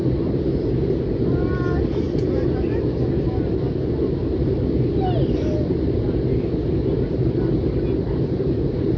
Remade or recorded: recorded